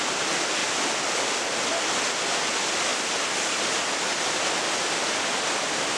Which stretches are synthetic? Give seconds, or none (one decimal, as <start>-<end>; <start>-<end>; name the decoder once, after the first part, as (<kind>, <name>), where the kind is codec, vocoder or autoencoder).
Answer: none